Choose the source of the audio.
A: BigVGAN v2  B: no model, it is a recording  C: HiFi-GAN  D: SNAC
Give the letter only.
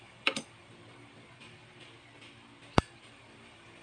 A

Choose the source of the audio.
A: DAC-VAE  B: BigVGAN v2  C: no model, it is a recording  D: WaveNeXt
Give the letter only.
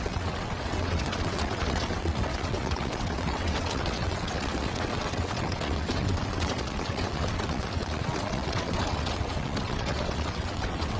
D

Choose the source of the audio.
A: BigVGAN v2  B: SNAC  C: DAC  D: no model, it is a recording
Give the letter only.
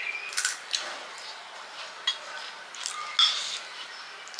D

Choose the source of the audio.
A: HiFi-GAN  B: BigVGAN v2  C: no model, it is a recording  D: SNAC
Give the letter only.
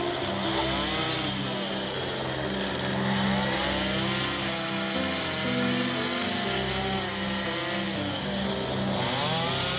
C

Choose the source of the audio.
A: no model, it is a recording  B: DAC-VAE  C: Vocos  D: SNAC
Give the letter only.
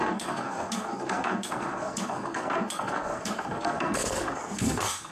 D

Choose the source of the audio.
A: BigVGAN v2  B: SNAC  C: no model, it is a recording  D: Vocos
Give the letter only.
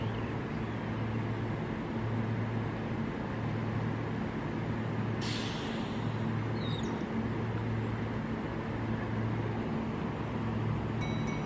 C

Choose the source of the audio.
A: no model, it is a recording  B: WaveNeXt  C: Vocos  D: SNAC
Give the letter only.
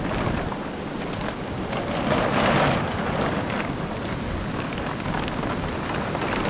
A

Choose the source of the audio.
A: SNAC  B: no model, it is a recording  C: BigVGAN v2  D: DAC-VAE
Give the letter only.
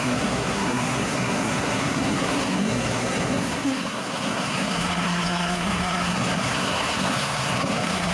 A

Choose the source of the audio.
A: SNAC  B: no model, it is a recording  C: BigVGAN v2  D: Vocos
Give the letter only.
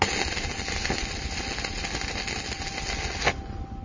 B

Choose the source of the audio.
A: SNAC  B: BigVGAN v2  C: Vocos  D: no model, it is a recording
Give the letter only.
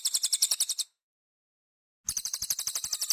D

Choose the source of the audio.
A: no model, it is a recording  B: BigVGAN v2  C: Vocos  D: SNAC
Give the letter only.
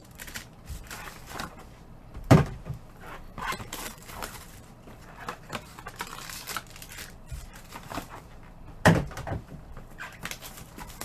B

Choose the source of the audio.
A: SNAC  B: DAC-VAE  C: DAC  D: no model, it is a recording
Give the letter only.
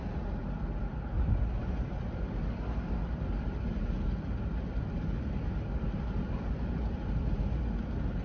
D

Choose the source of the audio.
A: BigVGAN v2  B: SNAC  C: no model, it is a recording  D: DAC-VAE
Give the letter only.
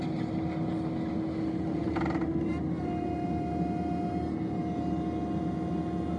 C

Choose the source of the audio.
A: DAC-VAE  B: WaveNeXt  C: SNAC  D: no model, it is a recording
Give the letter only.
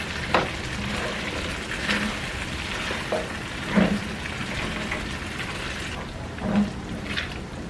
D